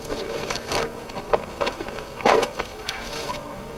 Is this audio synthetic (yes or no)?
yes